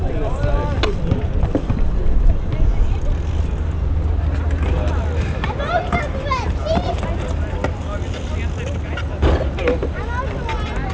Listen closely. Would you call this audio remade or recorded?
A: recorded